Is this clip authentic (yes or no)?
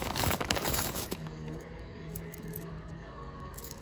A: no